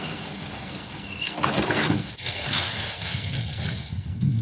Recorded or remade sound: remade